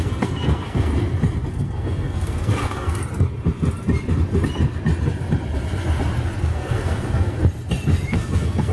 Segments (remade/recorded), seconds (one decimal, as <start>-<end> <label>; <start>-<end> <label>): 0.0-0.9 remade; 0.9-1.5 recorded; 1.5-3.0 remade; 3.0-6.4 recorded; 6.4-7.4 remade; 7.4-8.1 recorded; 8.1-8.7 remade